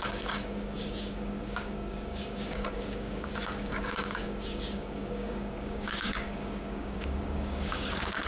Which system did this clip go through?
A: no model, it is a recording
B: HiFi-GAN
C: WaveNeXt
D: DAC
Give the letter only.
D